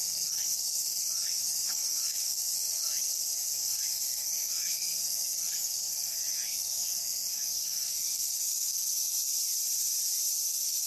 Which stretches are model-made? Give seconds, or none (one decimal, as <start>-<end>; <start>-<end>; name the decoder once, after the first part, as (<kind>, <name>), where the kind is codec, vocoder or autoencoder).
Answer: 0.0-9.3 (codec, SNAC); 10.5-10.9